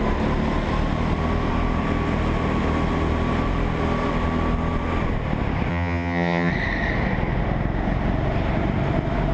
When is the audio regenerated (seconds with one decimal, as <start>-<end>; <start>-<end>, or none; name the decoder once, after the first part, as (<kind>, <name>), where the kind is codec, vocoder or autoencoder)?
5.7-6.5 (vocoder, HiFi-GAN)